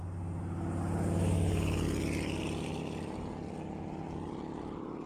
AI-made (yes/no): no